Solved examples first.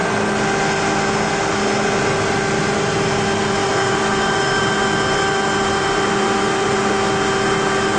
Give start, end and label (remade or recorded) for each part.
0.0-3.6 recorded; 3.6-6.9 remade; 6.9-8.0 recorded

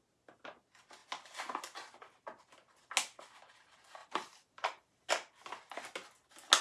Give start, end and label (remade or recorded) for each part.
0.0-4.0 recorded; 4.0-5.1 remade; 5.1-6.6 recorded

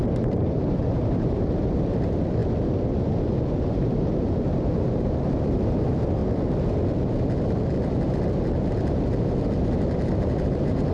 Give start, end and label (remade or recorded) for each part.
0.0-2.4 remade; 2.4-3.7 recorded; 3.7-6.2 remade; 6.2-10.1 recorded; 10.1-10.9 remade

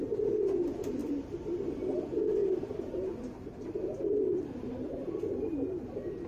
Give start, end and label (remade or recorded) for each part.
0.0-1.0 recorded; 1.0-1.6 remade; 1.6-6.3 recorded

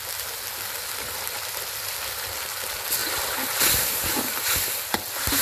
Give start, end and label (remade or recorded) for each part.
0.0-5.4 recorded

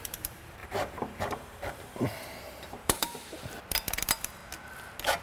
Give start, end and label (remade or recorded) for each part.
0.0-4.4 remade; 4.4-5.2 recorded

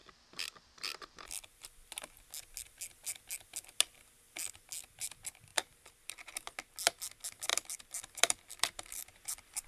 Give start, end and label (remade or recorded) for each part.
0.0-1.3 remade; 1.3-7.5 recorded; 7.5-9.7 remade

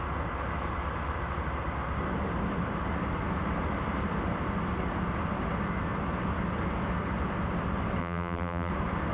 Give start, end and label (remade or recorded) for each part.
0.0-8.0 recorded; 8.0-8.7 remade; 8.7-9.1 recorded